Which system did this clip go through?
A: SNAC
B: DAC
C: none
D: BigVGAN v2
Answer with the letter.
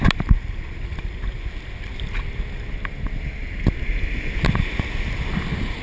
C